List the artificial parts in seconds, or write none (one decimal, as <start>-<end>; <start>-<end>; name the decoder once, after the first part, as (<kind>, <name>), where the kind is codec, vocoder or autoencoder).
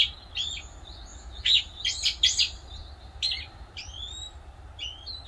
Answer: 1.1-1.6 (autoencoder, DAC-VAE)